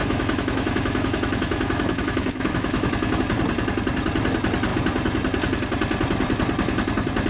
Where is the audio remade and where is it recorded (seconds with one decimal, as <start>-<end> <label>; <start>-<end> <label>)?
0.0-3.2 remade; 3.2-7.3 recorded